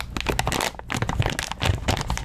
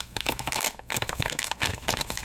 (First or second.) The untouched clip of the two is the first